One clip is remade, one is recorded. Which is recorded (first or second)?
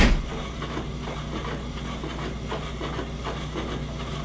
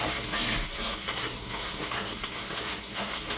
first